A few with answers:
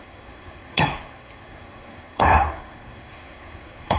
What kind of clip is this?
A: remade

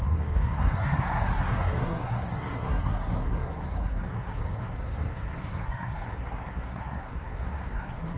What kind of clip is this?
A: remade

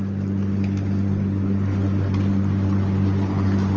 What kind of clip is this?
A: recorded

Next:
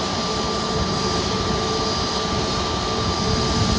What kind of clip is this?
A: recorded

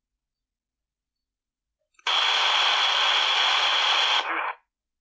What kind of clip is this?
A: recorded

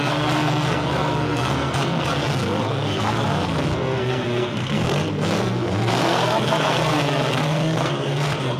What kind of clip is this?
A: remade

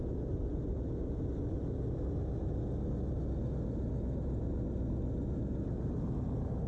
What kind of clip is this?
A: recorded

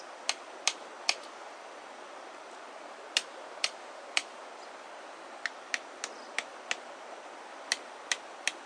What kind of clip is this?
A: recorded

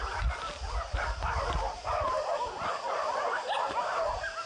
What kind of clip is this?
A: recorded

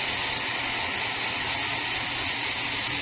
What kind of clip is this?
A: recorded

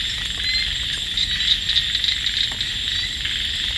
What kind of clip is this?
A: recorded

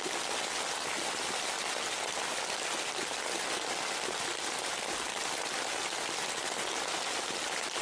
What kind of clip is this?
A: recorded